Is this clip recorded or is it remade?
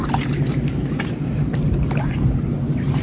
remade